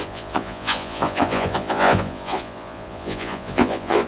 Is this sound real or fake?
fake